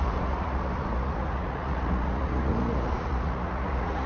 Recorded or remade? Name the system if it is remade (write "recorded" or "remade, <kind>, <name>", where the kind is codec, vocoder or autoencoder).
remade, vocoder, Vocos